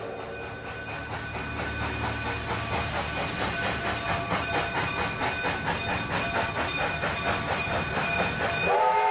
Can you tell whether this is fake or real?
real